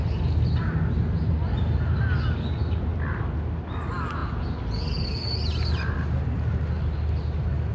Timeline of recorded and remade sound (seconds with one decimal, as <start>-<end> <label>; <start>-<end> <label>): 0.0-7.7 recorded